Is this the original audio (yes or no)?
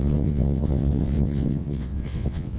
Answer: no